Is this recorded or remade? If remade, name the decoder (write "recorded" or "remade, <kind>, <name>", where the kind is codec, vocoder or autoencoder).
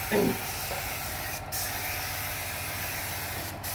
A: recorded